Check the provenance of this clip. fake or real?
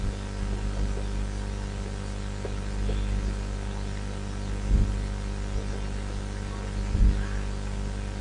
real